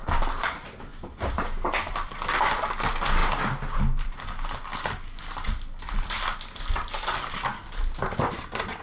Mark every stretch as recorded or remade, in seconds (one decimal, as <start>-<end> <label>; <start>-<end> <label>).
0.0-8.8 recorded